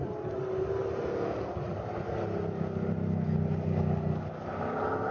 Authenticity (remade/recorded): recorded